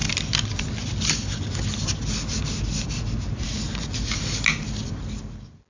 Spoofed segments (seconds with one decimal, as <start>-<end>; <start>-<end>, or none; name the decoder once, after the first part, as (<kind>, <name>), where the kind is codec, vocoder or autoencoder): none